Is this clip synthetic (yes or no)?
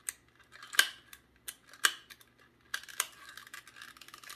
no